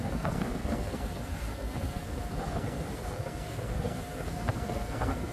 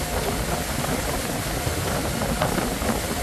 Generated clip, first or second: first